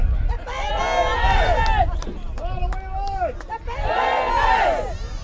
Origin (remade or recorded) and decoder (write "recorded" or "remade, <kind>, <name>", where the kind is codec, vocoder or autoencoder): recorded